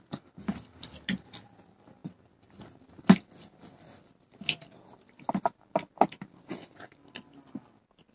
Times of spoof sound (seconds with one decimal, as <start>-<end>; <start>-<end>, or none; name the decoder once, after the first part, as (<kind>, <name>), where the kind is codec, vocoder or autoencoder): none